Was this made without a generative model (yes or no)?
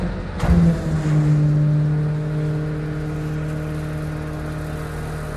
yes